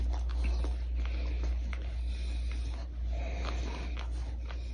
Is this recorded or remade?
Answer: recorded